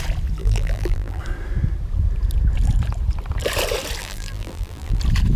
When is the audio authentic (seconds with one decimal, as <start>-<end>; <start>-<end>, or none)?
0.0-0.4; 1.2-4.0; 5.0-5.4